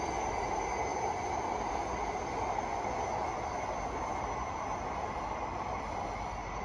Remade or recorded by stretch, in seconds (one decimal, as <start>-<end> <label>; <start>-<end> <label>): 0.0-6.6 recorded